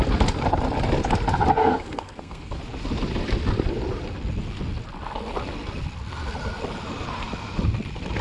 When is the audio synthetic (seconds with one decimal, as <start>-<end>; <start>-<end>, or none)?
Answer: 1.6-2.6